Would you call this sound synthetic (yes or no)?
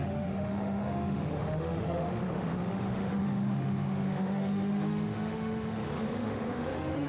yes